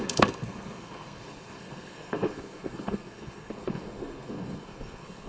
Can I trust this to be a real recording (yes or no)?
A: no